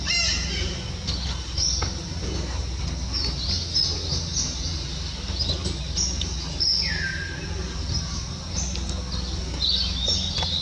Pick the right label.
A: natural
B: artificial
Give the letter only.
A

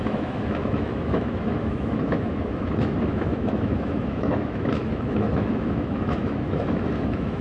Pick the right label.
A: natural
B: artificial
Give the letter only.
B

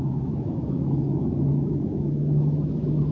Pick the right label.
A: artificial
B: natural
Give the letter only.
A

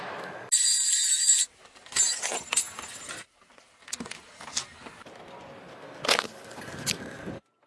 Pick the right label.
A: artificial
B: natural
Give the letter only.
B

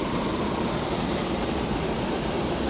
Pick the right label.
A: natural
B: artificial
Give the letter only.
A